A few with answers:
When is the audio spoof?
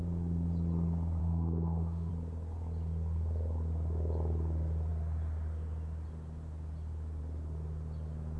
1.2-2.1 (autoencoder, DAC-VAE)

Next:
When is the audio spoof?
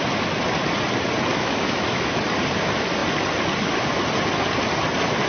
1.3-2.2 (autoencoder, DAC-VAE)